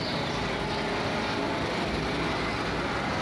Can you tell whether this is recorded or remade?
recorded